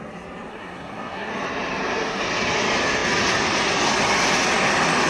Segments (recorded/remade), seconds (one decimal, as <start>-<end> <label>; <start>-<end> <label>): 0.0-0.5 recorded; 0.5-1.3 remade; 1.3-5.1 recorded